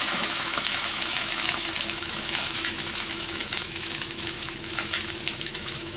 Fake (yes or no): yes